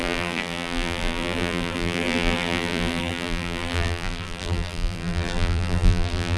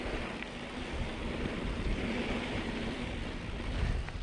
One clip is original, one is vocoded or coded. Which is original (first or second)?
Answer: second